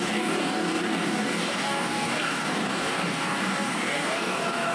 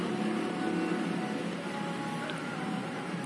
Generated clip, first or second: first